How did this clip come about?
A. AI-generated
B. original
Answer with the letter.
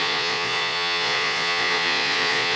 A